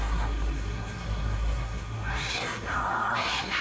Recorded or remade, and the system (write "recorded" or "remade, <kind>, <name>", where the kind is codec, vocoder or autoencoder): remade, codec, SNAC